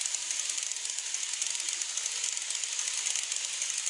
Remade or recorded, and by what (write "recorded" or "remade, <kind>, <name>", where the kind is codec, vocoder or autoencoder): recorded